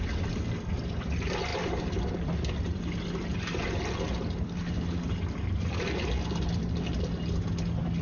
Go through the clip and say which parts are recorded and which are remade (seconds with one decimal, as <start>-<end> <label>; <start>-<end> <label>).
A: 0.0-8.0 recorded